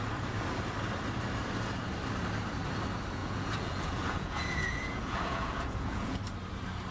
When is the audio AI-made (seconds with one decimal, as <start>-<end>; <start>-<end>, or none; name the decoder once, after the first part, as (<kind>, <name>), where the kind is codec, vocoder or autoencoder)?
3.2-6.2 (vocoder, Vocos)